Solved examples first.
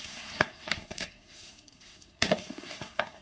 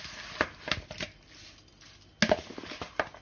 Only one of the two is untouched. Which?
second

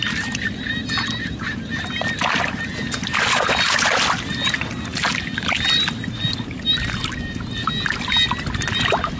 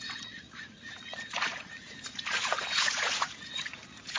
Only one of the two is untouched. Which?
first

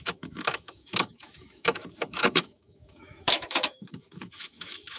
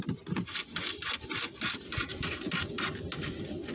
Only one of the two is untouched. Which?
second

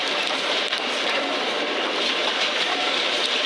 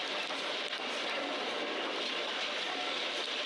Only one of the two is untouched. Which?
second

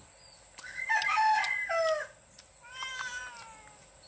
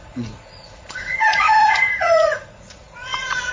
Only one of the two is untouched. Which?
first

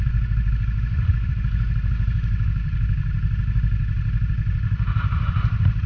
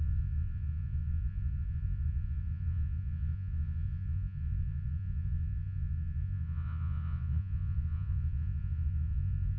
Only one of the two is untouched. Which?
first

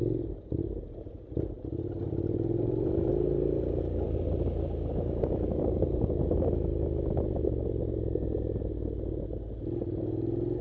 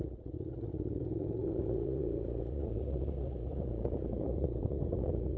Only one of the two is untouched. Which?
first